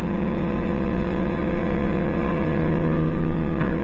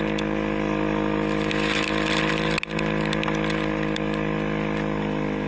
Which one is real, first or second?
second